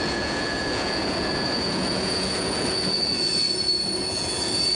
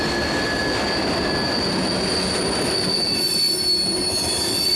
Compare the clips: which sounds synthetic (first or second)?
first